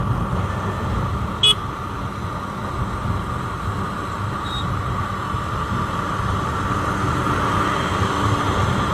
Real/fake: real